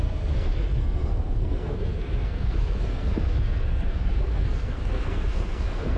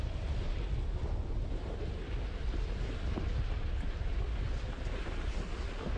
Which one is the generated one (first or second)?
first